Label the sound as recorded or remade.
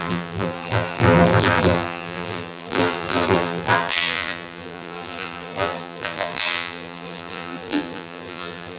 remade